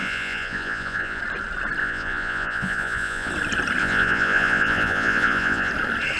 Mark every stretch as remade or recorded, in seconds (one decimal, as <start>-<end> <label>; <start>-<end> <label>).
0.0-1.2 remade; 1.2-1.8 recorded; 1.8-3.3 remade; 3.3-3.8 recorded; 3.8-5.7 remade; 5.7-6.2 recorded